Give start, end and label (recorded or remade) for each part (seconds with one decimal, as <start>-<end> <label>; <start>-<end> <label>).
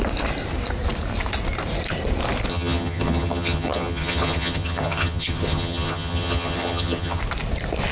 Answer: 0.0-2.5 recorded; 2.5-7.2 remade; 7.2-7.9 recorded